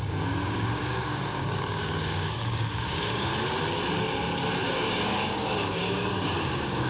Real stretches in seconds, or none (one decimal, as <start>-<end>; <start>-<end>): 3.3-4.7